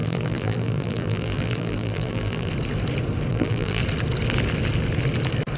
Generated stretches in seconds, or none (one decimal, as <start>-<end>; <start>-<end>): 0.0-2.5; 3.3-3.8